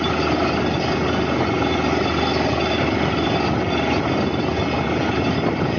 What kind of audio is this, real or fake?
real